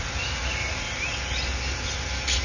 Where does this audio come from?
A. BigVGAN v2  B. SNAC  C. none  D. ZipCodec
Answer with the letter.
C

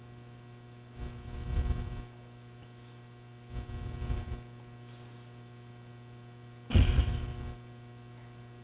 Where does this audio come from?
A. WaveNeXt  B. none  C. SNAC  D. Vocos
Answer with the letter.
B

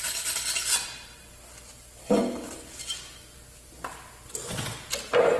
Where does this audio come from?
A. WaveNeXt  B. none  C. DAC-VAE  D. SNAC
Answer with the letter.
B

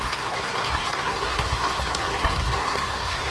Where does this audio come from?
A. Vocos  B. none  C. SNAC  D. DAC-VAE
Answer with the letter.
C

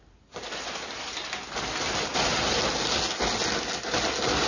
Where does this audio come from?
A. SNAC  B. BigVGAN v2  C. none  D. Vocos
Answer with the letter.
C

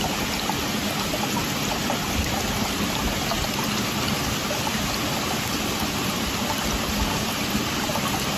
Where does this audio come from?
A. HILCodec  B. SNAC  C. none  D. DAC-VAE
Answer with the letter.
C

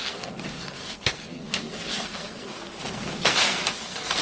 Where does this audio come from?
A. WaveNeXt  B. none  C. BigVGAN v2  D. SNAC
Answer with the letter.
D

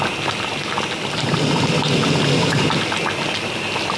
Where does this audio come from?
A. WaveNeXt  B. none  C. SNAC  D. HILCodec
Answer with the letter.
B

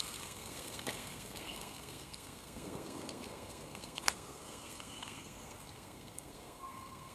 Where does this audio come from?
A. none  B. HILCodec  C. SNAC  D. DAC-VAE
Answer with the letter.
C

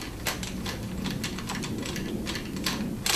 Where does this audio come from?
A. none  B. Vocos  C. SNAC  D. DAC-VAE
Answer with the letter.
A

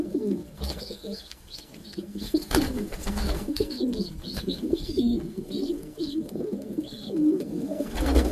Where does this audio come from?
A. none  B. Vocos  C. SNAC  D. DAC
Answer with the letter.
C